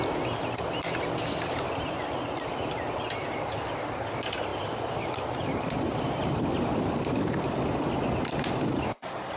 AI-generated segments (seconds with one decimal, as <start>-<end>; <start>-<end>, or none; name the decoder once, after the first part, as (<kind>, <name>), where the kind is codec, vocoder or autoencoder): none